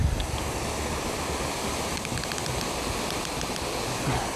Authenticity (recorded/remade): recorded